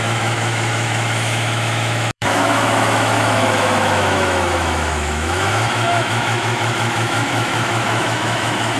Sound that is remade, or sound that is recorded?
remade